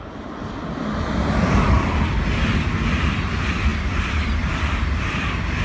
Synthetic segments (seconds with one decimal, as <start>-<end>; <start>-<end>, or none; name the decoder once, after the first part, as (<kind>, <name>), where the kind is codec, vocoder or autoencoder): none